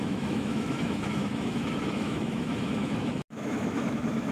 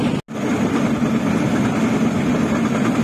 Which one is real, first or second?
second